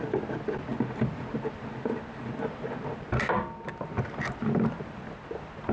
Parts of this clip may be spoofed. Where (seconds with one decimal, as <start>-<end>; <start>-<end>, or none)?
none